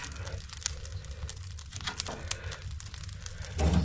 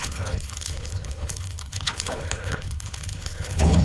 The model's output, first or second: second